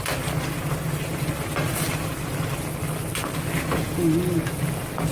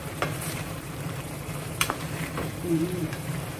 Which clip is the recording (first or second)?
first